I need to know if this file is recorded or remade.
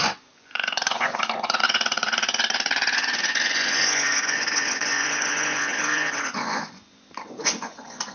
remade